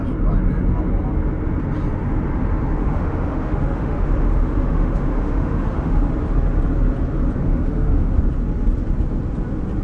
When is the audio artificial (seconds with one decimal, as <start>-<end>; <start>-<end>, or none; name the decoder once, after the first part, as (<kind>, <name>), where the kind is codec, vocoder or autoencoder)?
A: 2.8-6.0 (autoencoder, DAC-VAE); 7.4-8.2